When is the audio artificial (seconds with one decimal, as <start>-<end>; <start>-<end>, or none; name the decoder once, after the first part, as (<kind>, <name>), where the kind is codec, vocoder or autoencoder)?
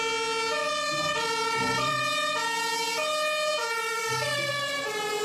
0.6-2.0 (vocoder, BigVGAN v2); 3.6-4.5